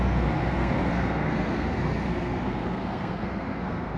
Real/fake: fake